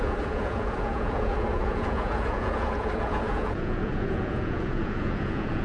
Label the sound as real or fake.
fake